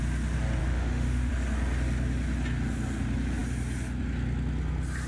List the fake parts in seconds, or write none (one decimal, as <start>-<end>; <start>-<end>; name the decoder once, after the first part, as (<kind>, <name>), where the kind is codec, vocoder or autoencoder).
0.6-1.3 (autoencoder, DAC-VAE)